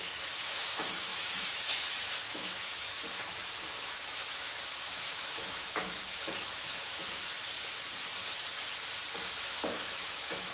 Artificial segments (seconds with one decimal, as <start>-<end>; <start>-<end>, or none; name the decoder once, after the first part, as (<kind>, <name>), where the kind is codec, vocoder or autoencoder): 0.0-7.2 (autoencoder, DAC-VAE); 9.4-10.5

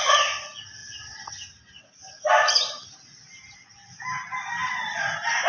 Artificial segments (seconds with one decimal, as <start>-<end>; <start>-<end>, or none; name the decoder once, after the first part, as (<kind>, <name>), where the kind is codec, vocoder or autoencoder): none

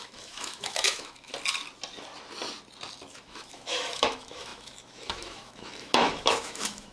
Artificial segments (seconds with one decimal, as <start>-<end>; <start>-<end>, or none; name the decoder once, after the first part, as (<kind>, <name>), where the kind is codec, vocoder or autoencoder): 0.0-1.3 (autoencoder, DAC-VAE); 3.1-6.9

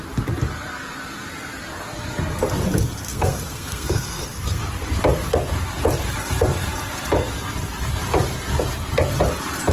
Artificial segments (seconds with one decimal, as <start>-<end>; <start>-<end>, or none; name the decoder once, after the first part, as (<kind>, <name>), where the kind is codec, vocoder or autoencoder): 3.1-4.6 (codec, SNAC)

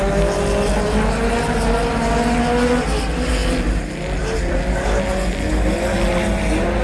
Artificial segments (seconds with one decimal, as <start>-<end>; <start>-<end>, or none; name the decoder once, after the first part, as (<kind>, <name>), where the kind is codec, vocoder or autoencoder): none

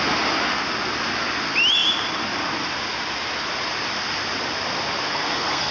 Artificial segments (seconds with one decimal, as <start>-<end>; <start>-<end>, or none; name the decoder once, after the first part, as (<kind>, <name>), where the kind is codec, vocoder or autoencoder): 5.1-5.7 (codec, SNAC)